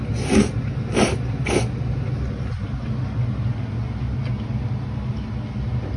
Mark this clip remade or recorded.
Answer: recorded